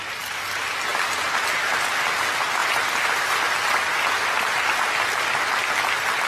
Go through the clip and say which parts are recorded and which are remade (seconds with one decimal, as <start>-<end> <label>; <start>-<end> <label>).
0.0-6.3 recorded